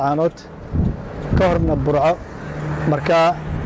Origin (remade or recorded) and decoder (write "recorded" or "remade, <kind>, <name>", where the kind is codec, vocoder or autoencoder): recorded